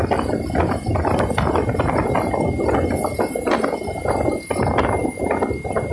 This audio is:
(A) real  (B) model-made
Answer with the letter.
A